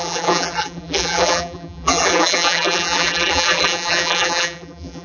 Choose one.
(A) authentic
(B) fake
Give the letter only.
B